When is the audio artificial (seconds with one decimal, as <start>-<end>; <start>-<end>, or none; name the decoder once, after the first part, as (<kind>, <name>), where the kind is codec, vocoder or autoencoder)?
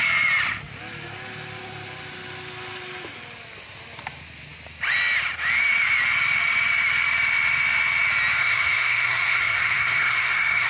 8.4-10.7 (codec, SNAC)